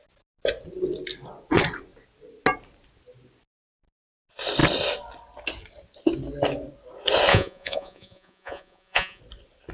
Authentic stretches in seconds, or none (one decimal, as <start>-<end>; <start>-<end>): 0.0-7.3; 9.2-9.7